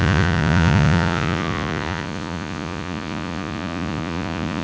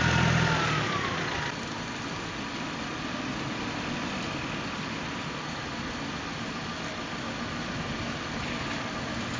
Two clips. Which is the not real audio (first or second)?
first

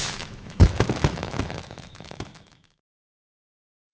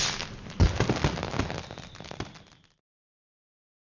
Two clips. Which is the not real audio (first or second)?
first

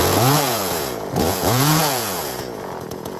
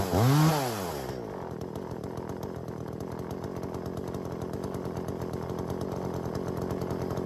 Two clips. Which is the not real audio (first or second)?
first